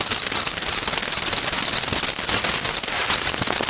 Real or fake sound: real